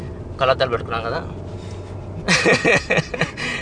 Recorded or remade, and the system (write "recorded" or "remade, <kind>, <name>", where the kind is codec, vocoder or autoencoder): recorded